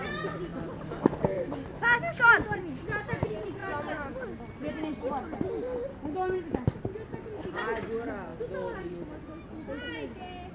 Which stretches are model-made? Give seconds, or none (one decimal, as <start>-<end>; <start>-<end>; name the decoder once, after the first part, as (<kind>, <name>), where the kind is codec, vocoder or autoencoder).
none